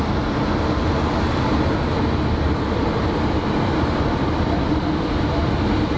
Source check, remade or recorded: recorded